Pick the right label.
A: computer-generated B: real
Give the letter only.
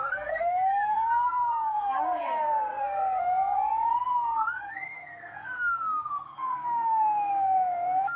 A